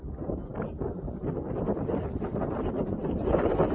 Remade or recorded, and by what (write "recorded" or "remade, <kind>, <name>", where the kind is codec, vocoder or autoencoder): recorded